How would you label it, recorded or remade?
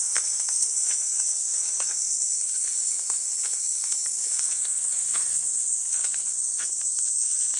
remade